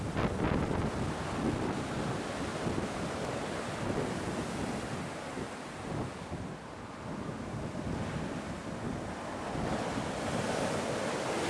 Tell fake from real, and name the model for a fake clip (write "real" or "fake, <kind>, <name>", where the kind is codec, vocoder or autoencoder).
real